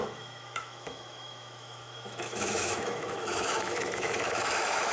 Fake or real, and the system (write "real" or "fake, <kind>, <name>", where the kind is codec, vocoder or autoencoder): fake, autoencoder, DAC-VAE